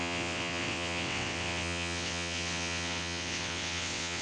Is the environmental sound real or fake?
fake